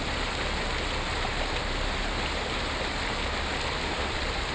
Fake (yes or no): no